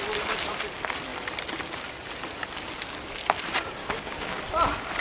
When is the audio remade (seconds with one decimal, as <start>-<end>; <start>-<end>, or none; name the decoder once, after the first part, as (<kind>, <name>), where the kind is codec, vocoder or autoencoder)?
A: 3.8-4.4 (codec, DAC)